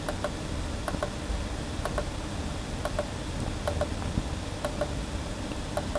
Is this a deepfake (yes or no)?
no